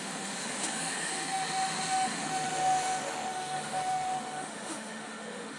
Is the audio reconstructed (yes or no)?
yes